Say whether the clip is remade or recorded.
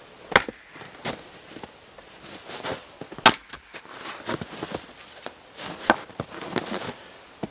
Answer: recorded